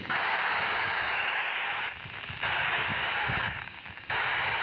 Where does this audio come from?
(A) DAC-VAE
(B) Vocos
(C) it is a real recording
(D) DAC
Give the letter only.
D